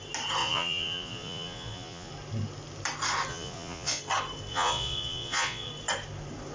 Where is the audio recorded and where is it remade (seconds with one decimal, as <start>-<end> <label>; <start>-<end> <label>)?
0.0-0.4 recorded; 0.4-2.1 remade; 2.1-3.3 recorded; 3.3-4.0 remade; 4.0-4.5 recorded; 4.5-5.7 remade; 5.7-6.5 recorded